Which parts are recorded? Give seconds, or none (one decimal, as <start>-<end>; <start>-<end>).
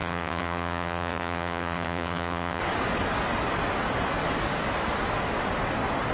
2.6-6.1